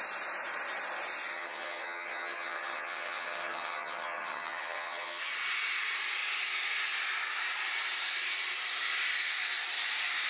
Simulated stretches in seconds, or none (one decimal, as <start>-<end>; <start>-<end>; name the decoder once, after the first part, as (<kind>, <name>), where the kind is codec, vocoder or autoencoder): 1.3-5.3 (vocoder, HiFi-GAN)